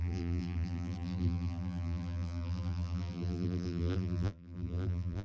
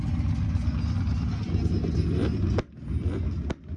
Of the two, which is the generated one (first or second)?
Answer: first